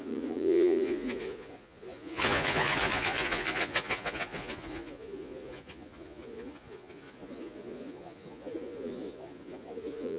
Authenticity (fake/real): fake